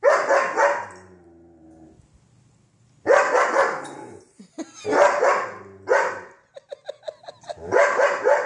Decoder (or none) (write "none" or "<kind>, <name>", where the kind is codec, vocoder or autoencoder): none